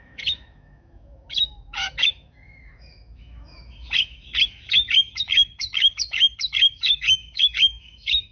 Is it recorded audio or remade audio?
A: remade